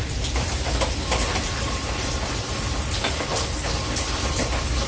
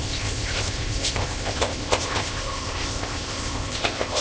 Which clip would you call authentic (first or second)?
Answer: first